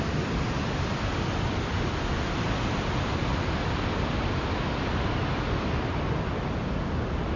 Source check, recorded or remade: recorded